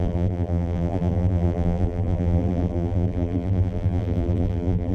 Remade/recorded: remade